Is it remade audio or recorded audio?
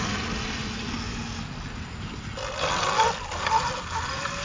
recorded